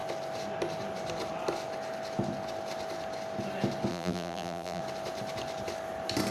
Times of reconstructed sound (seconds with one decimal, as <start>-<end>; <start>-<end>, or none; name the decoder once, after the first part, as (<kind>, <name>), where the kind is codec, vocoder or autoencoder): 3.9-4.8 (vocoder, BigVGAN v2)